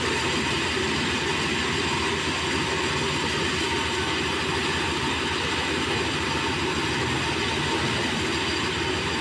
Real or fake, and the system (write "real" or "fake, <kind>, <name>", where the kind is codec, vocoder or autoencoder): real